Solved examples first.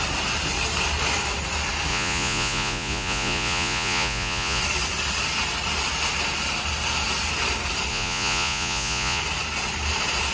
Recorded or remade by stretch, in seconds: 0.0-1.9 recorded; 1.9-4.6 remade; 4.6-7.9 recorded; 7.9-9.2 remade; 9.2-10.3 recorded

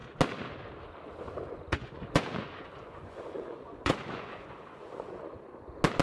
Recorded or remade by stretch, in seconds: 0.0-1.7 recorded; 1.7-5.3 remade; 5.3-6.0 recorded